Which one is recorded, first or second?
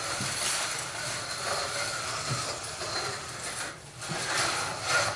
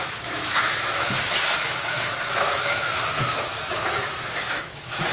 first